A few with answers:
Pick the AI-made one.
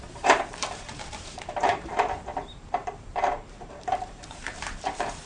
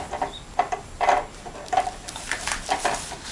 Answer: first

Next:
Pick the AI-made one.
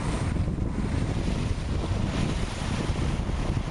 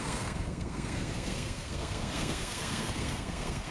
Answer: second